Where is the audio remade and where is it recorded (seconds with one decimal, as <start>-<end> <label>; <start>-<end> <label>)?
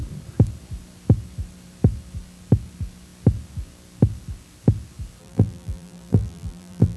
0.0-5.2 recorded; 5.2-7.0 remade